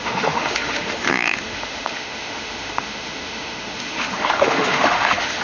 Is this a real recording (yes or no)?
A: no